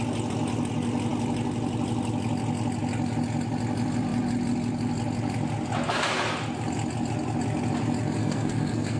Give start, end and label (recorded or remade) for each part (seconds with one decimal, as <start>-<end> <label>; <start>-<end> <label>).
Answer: 0.0-8.2 recorded; 8.2-9.0 remade